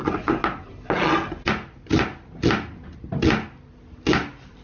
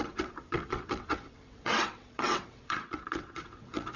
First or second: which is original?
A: first